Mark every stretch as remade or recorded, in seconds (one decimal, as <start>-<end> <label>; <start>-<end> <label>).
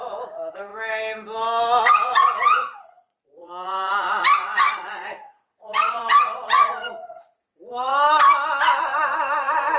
0.0-0.7 remade; 0.7-1.8 recorded; 1.8-7.9 remade; 7.9-8.8 recorded; 8.8-9.8 remade